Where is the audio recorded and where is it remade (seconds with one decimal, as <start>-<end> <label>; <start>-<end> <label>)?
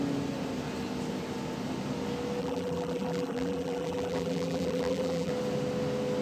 0.0-2.4 recorded; 2.4-5.3 remade; 5.3-6.2 recorded